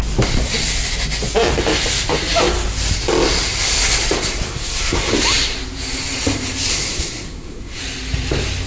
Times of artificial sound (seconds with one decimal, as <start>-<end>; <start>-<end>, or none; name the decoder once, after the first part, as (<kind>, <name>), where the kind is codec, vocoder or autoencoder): 4.5-5.1 (codec, SNAC); 6.7-7.8